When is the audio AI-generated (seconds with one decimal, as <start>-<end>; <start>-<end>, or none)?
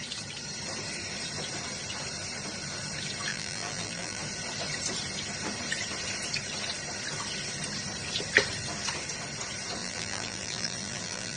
3.3-4.2; 9.8-11.4